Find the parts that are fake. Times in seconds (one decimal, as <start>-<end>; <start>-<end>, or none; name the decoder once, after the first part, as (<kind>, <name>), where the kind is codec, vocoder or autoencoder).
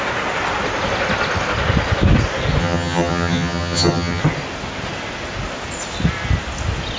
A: 2.6-4.2 (vocoder, HiFi-GAN)